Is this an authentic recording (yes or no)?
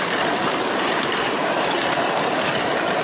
no